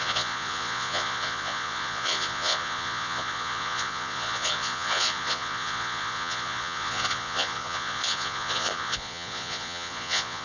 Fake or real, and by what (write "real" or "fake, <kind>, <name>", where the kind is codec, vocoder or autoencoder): fake, vocoder, Vocos